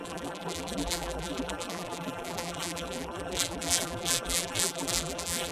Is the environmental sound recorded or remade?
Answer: remade